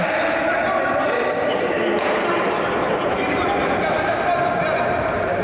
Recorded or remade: remade